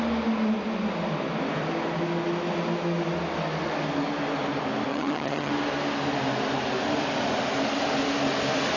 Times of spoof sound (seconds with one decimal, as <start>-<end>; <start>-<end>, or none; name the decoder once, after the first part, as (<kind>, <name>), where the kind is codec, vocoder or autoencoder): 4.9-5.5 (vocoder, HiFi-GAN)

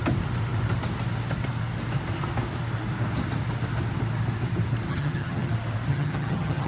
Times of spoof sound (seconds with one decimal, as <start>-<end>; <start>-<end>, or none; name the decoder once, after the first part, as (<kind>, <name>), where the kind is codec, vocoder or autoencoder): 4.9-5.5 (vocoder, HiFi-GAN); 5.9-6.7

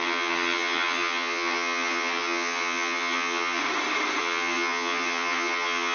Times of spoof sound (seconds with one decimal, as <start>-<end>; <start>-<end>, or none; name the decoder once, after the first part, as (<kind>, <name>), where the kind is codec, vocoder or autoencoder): 0.0-3.6 (vocoder, HiFi-GAN); 4.2-5.9

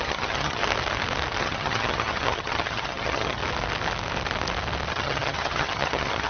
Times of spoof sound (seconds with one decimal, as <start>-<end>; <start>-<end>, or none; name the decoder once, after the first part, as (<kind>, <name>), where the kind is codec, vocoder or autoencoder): 0.0-0.6 (vocoder, HiFi-GAN); 1.4-3.4; 4.9-6.3